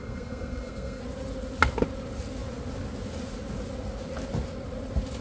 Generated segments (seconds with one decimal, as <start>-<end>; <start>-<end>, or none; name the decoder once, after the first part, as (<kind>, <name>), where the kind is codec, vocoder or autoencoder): 0.0-1.0 (codec, SNAC)